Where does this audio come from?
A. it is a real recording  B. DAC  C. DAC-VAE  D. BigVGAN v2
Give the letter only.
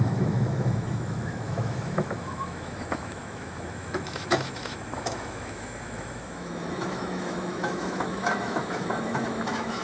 C